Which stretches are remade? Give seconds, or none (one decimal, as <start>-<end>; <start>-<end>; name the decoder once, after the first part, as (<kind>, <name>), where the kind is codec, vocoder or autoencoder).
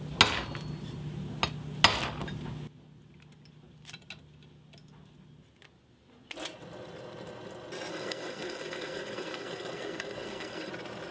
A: 7.9-10.7 (codec, SNAC)